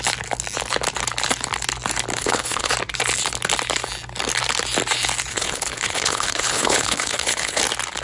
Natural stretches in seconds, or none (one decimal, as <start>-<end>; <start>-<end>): 0.0-2.1; 2.7-5.3; 7.6-8.0